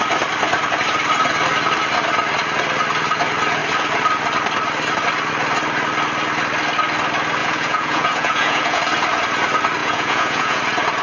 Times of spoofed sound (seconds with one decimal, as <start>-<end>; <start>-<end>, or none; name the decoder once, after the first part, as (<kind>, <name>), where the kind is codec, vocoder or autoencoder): 7.4-8.8 (vocoder, Vocos); 9.8-10.6